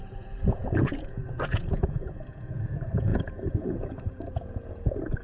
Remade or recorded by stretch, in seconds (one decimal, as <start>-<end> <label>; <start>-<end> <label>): 0.0-5.2 remade